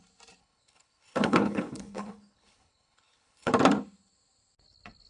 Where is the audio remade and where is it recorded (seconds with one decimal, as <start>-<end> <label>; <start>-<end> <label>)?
0.0-0.4 recorded; 0.4-3.5 remade; 3.5-5.1 recorded